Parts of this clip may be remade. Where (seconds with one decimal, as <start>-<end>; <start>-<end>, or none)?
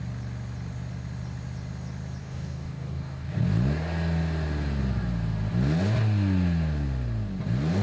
2.2-3.4